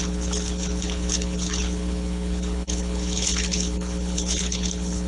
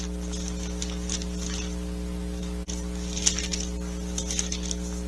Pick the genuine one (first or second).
second